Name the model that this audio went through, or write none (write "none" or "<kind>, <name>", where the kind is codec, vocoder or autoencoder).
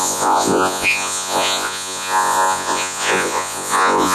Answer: vocoder, Vocos